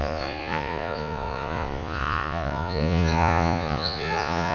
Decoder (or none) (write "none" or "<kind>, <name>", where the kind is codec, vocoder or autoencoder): vocoder, Vocos